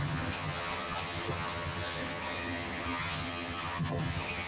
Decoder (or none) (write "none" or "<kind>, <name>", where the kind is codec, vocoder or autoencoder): vocoder, HiFi-GAN